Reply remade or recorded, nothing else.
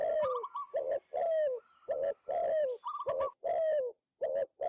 recorded